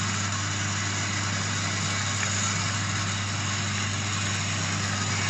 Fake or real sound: real